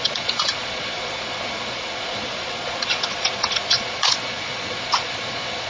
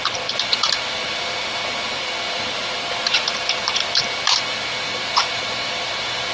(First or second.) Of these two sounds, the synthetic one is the first